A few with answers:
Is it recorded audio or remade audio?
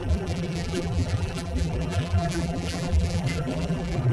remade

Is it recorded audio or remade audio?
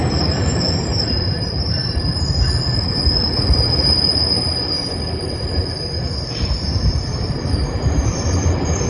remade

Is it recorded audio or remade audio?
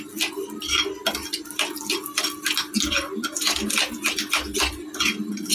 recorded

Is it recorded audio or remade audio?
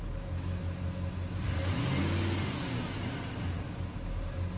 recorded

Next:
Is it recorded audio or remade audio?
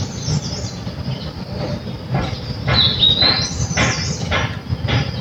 recorded